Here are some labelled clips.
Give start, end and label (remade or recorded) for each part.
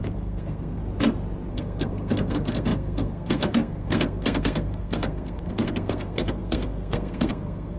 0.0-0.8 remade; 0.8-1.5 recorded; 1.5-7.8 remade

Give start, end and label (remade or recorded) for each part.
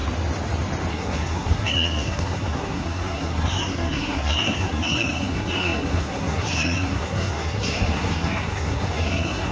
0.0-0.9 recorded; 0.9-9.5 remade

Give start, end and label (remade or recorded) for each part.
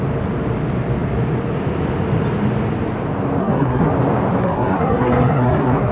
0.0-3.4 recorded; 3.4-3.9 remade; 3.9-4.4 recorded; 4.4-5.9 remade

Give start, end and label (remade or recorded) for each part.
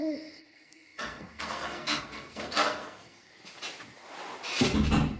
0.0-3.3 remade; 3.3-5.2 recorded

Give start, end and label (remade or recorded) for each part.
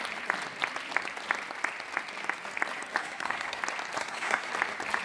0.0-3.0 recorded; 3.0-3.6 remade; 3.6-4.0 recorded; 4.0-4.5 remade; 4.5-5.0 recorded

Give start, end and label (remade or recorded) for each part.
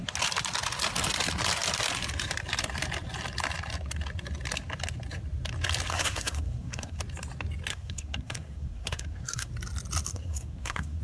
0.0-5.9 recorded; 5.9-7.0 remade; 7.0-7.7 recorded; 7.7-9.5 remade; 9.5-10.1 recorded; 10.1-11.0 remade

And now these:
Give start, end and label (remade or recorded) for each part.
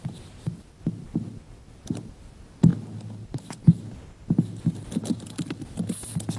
0.0-6.4 recorded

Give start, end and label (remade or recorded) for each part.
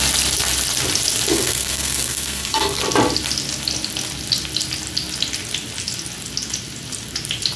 0.0-1.3 recorded; 1.3-2.8 remade; 2.8-7.6 recorded